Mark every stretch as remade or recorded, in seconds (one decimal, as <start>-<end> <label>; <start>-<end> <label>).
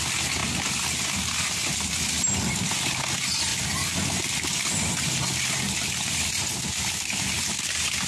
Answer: 0.0-8.1 recorded